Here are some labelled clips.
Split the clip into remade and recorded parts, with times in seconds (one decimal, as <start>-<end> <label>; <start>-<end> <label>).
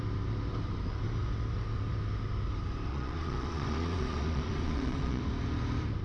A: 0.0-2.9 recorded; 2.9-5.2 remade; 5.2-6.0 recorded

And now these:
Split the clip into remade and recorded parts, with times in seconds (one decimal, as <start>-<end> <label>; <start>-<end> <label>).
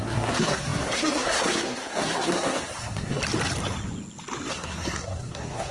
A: 0.0-3.2 remade; 3.2-4.5 recorded; 4.5-5.7 remade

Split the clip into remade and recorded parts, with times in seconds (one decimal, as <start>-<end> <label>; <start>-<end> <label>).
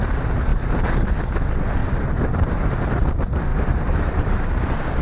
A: 0.0-0.5 recorded; 0.5-1.0 remade; 1.0-1.8 recorded; 1.8-3.0 remade; 3.0-3.5 recorded; 3.5-4.4 remade; 4.4-5.0 recorded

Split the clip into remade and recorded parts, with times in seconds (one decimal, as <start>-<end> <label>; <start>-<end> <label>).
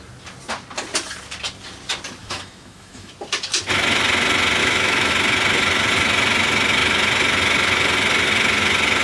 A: 0.0-2.2 recorded; 2.2-3.1 remade; 3.1-4.6 recorded; 4.6-5.1 remade; 5.1-9.0 recorded